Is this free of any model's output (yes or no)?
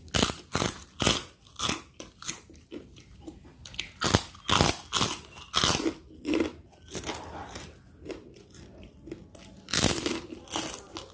yes